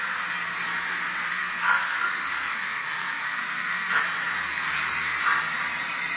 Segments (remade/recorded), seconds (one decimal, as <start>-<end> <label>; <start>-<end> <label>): 0.0-1.3 recorded; 1.3-4.0 remade; 4.0-4.4 recorded; 4.4-5.2 remade; 5.2-6.2 recorded